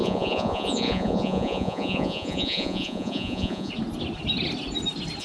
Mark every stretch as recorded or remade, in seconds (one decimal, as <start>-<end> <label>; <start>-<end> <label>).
0.0-3.7 remade; 3.7-5.2 recorded